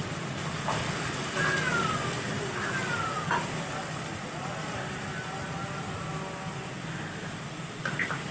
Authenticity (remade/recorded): recorded